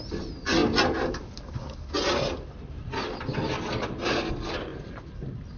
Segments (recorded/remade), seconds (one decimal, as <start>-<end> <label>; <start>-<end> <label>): 0.0-5.6 recorded